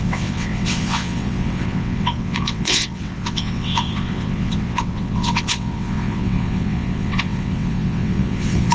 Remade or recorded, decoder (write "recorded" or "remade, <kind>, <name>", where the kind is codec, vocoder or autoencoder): remade, vocoder, WaveNeXt